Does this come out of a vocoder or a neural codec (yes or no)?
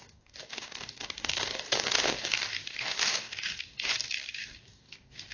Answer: yes